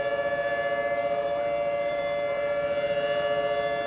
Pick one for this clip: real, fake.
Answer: fake